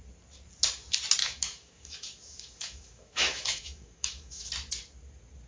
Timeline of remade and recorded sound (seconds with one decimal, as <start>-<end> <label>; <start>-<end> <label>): 0.0-1.2 recorded; 1.2-4.5 remade; 4.5-5.5 recorded